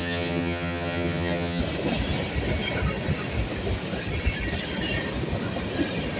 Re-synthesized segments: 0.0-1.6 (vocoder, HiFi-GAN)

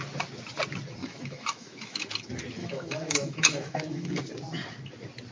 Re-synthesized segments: 1.0-2.1 (autoencoder, DAC-VAE); 2.6-4.2

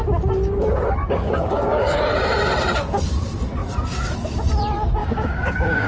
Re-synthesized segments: 1.0-2.0 (codec, DAC); 5.0-5.9